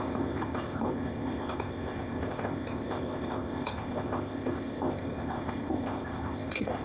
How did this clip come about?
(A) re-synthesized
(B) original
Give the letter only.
A